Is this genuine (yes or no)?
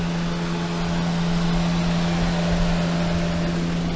yes